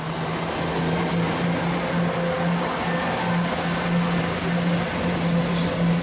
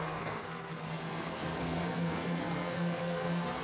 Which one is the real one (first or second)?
first